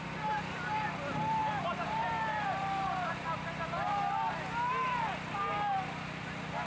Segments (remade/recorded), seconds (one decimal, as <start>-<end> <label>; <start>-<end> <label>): 0.0-1.4 recorded; 1.4-4.9 remade; 4.9-6.7 recorded